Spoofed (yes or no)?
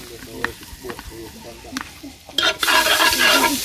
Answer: no